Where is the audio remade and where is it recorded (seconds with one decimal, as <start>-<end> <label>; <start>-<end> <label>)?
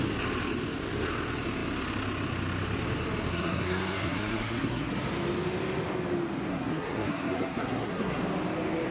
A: 0.0-3.3 recorded; 3.3-4.9 remade; 4.9-6.5 recorded; 6.5-8.2 remade; 8.2-8.9 recorded